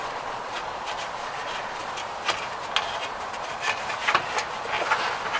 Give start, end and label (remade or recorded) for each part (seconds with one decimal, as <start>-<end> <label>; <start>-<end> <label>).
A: 0.0-0.6 remade; 0.6-1.2 recorded; 1.2-2.0 remade; 2.0-5.4 recorded